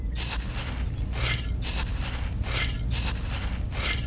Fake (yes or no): no